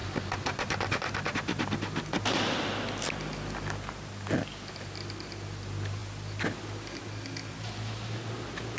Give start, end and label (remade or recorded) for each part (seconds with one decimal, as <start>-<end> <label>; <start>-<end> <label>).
0.0-8.8 recorded